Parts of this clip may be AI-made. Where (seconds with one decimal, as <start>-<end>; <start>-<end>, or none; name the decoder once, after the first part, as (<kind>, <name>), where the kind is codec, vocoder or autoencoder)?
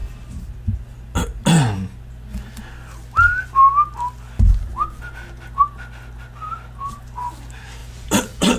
7.8-8.6 (vocoder, BigVGAN v2)